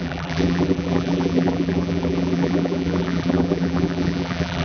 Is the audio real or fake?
fake